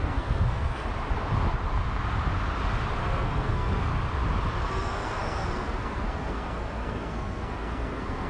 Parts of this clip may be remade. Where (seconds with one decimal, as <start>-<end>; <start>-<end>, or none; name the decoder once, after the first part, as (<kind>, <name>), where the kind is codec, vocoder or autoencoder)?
0.0-0.9 (codec, SNAC); 3.0-3.9; 4.6-8.3